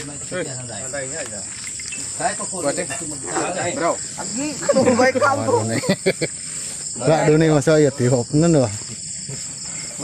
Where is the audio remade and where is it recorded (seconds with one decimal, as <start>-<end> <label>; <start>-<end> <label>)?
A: 0.0-2.1 recorded; 2.1-2.8 remade; 2.8-4.3 recorded; 4.3-4.9 remade; 4.9-7.2 recorded; 7.2-9.3 remade; 9.3-10.0 recorded